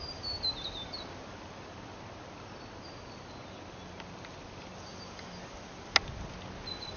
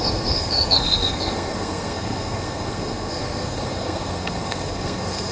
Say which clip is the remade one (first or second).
second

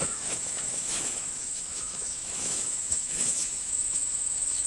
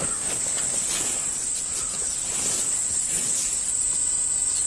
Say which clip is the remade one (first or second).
first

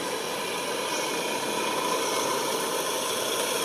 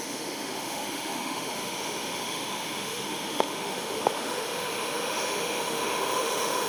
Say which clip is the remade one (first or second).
second